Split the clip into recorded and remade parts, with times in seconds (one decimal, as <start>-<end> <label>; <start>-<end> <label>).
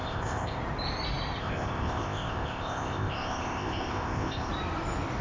0.0-0.6 remade; 0.6-1.4 recorded; 1.4-4.5 remade; 4.5-5.2 recorded